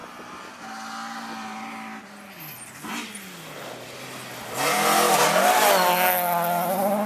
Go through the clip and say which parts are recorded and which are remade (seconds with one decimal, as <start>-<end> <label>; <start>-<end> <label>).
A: 0.0-7.1 recorded